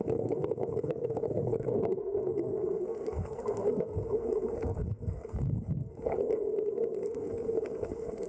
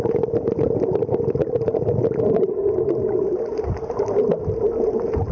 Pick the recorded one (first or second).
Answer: second